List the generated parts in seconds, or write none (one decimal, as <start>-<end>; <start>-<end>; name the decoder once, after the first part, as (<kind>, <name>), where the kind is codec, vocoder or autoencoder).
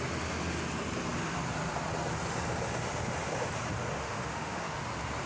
4.0-4.8 (autoencoder, DAC-VAE)